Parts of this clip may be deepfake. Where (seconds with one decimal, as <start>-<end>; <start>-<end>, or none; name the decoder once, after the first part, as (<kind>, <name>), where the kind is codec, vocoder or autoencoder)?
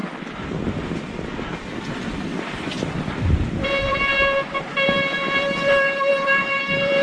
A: 1.8-4.1 (vocoder, BigVGAN v2); 4.7-7.0